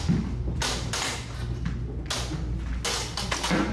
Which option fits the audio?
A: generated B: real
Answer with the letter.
B